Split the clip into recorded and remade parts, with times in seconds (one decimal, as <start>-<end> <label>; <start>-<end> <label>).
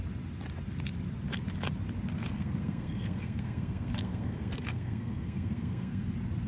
0.0-2.2 recorded; 2.2-6.1 remade; 6.1-6.5 recorded